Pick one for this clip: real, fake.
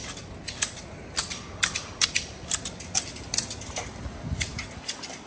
real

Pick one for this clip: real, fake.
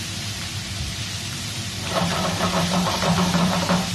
fake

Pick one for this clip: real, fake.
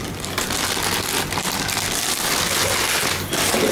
real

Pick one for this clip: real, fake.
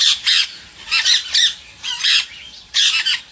fake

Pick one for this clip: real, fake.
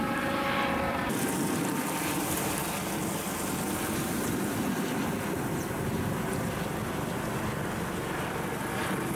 fake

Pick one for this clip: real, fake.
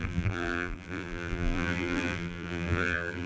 fake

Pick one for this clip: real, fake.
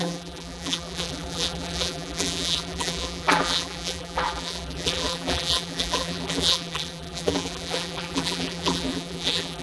fake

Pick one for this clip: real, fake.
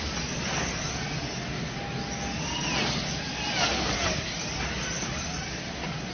real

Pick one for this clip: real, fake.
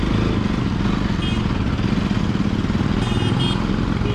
real